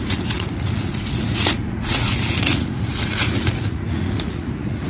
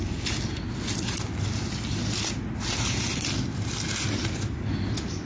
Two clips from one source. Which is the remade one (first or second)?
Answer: first